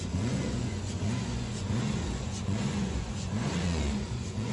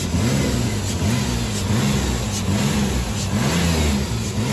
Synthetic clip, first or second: first